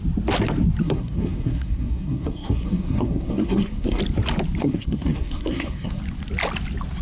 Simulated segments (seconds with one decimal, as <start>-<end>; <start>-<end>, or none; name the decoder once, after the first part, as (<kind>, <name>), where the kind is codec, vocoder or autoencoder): 0.8-4.0 (codec, SNAC); 4.6-6.0